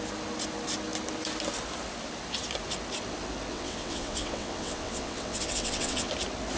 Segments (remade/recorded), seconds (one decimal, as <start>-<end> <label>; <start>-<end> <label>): 0.0-3.5 recorded; 3.5-6.1 remade; 6.1-6.6 recorded